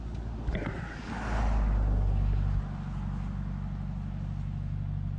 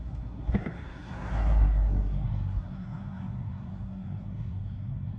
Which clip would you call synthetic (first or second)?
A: second